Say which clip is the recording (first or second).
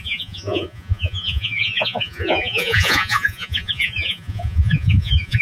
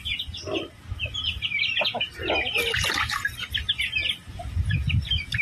second